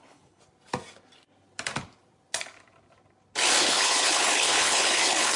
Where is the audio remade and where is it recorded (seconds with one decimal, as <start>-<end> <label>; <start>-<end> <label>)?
0.0-0.4 remade; 0.4-3.6 recorded; 3.6-5.4 remade